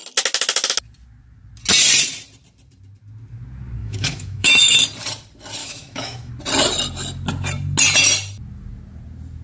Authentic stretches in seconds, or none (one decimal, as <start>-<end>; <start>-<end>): 0.0-3.8; 4.8-5.6; 6.3-9.4